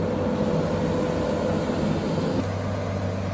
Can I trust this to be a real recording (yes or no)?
yes